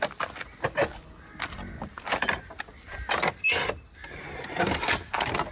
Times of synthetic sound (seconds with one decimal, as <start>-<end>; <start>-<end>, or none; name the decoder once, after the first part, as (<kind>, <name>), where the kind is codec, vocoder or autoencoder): none